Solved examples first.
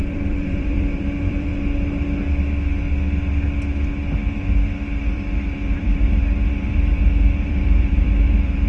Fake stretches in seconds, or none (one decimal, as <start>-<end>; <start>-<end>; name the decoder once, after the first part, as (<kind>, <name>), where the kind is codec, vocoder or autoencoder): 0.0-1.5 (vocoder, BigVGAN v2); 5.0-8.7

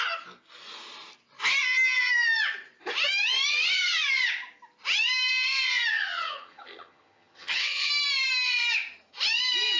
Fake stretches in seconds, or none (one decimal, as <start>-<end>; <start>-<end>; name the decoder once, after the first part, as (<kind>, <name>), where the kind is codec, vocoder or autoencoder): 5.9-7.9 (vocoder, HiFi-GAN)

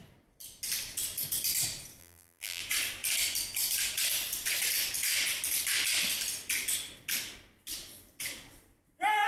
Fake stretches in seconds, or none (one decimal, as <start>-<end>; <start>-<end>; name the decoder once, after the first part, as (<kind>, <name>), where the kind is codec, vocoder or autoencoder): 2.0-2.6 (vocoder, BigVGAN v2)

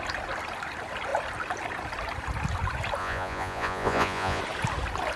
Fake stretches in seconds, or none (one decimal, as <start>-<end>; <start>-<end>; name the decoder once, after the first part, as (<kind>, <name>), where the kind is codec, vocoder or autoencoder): 3.0-4.4 (vocoder, Vocos)

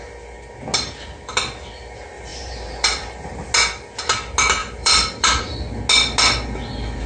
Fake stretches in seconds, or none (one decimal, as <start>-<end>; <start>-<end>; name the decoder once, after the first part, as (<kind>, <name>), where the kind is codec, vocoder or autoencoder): 2.3-3.5 (vocoder, BigVGAN v2); 4.6-5.4